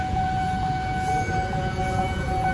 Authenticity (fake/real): fake